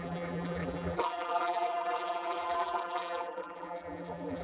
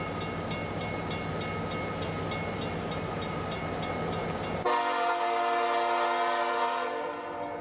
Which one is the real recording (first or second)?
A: second